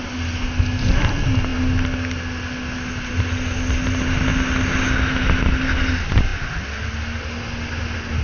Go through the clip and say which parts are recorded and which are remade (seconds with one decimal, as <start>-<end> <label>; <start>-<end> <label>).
0.0-8.2 recorded